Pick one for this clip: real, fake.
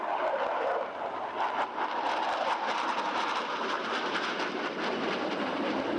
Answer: real